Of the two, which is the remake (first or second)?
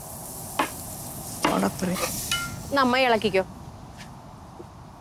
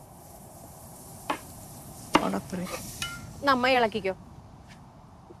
second